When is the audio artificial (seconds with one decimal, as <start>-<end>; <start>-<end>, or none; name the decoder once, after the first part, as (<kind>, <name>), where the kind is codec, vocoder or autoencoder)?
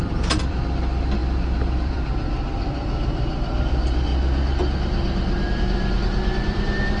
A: 0.0-4.1 (vocoder, BigVGAN v2); 5.5-7.0